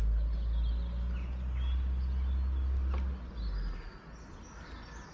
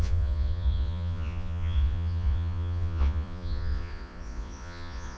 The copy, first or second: second